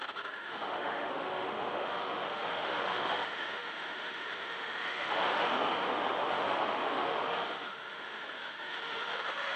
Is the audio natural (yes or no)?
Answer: no